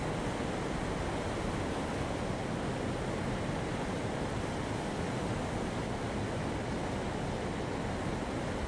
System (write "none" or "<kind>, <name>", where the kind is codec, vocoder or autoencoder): none